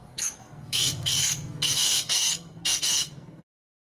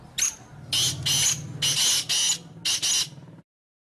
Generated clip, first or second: first